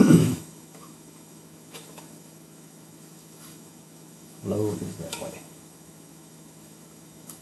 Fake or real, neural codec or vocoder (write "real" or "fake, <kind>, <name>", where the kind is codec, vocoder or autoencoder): fake, autoencoder, DAC-VAE